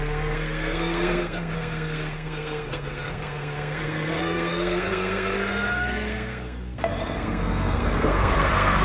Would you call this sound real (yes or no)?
no